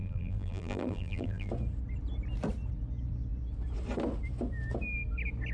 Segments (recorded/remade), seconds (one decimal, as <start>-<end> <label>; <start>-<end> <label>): 0.0-1.5 remade; 1.5-5.5 recorded

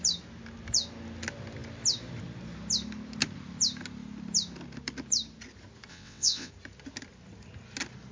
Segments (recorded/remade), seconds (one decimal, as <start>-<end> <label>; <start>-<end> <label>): 0.0-5.9 recorded; 5.9-6.5 remade; 6.5-8.1 recorded

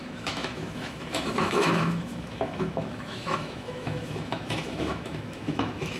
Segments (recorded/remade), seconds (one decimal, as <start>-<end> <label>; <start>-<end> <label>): 0.0-6.0 remade

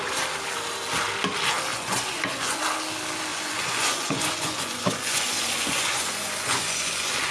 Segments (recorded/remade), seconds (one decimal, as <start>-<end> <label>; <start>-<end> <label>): 0.0-1.7 recorded; 1.7-2.6 remade; 2.6-3.3 recorded; 3.3-7.3 remade